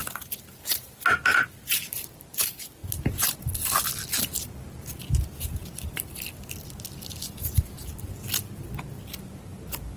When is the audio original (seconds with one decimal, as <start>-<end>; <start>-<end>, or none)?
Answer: 0.0-10.0